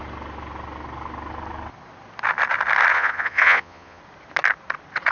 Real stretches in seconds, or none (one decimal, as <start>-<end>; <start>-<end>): 0.0-2.9; 4.0-5.1